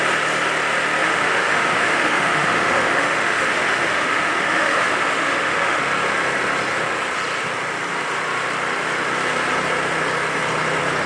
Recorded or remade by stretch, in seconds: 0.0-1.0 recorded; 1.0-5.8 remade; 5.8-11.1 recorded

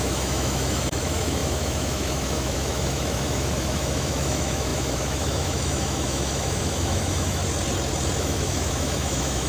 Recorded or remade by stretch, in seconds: 0.0-7.4 remade; 7.4-8.2 recorded; 8.2-9.5 remade